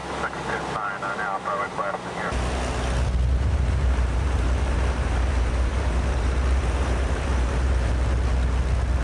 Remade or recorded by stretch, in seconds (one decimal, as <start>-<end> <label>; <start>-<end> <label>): 0.0-3.3 recorded; 3.3-7.9 remade; 7.9-9.0 recorded